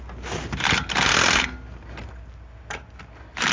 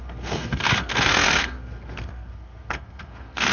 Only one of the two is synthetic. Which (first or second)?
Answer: second